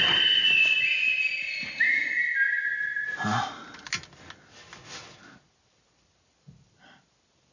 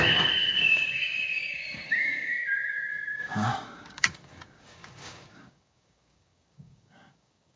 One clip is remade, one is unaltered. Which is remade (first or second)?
second